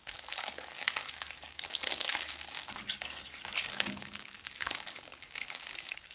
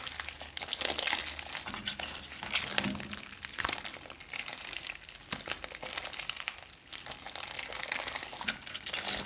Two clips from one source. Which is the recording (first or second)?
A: second